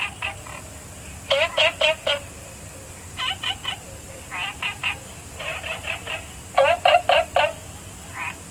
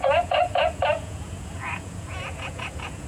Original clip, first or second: first